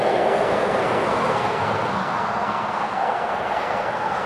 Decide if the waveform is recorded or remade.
remade